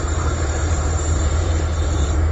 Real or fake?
fake